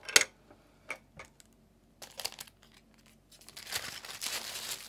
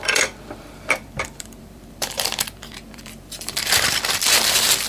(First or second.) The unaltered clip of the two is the first